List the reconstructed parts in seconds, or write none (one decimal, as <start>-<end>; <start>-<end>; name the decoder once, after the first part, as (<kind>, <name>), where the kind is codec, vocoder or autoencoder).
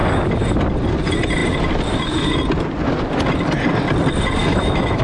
4.4-5.0 (autoencoder, DAC-VAE)